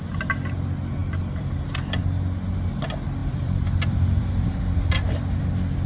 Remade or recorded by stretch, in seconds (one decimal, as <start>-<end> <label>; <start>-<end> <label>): 0.0-1.0 recorded; 1.0-2.0 remade; 2.0-3.2 recorded; 3.2-5.4 remade; 5.4-5.9 recorded

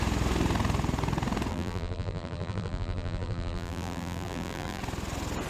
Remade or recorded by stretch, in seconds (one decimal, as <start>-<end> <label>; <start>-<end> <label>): 0.0-1.5 recorded; 1.5-4.8 remade; 4.8-5.5 recorded

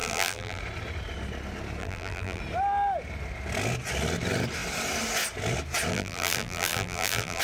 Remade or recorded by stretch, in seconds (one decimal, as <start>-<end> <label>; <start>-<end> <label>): 0.0-0.6 remade; 0.6-1.8 recorded; 1.8-2.4 remade; 2.4-5.9 recorded; 5.9-7.4 remade